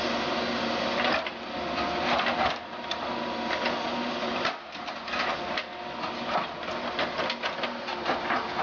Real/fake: real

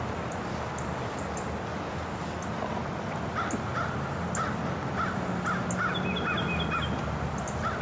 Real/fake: real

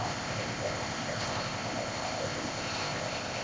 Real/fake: fake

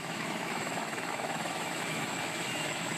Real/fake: fake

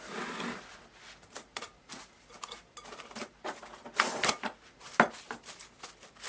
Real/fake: real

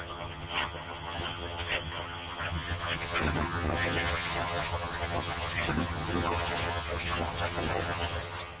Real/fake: fake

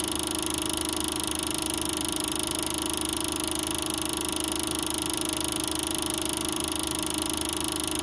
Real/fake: real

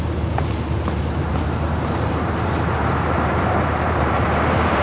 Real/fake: fake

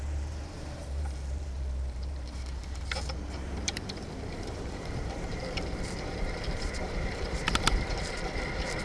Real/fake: fake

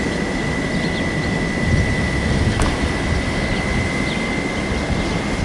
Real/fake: real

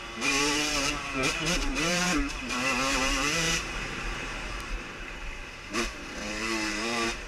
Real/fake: fake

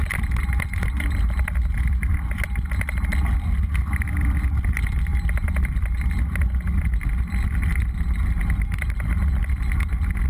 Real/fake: real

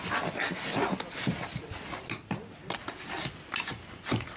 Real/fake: real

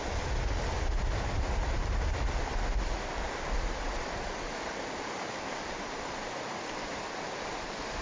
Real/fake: fake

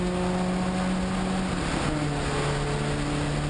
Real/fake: real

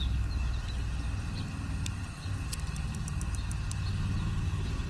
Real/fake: real